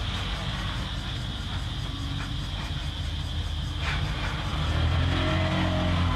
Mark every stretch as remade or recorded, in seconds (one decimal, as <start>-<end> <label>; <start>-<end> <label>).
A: 0.0-6.2 recorded